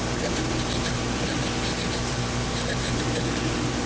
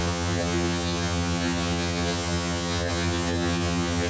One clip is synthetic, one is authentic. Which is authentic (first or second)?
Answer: first